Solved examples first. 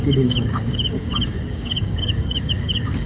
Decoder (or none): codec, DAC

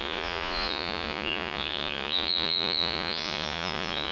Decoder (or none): vocoder, Vocos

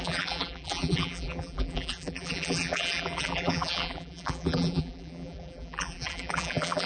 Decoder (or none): vocoder, BigVGAN v2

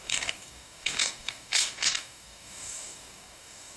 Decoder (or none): codec, DAC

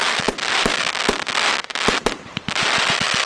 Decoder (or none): none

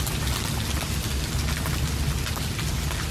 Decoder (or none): none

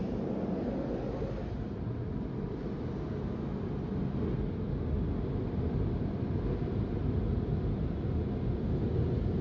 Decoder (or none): none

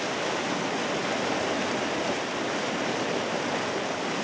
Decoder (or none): none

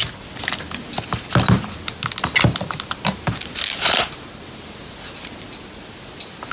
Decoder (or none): none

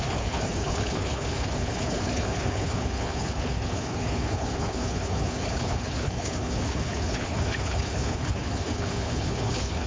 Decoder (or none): codec, HILCodec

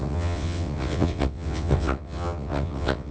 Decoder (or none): vocoder, WaveNeXt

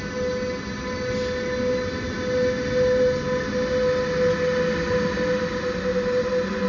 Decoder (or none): none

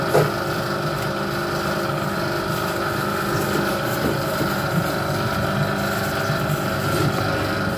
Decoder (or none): none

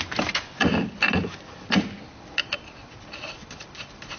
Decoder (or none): none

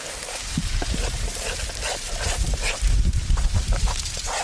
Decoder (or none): vocoder, BigVGAN v2